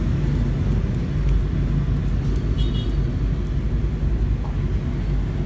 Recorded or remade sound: recorded